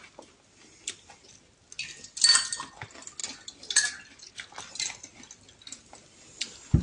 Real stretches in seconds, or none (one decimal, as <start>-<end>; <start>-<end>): 0.0-6.8